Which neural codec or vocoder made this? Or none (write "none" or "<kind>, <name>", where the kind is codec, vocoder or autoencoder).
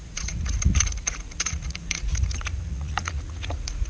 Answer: vocoder, Vocos